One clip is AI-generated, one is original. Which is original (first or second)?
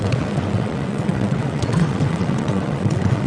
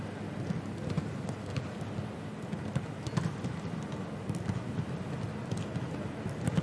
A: second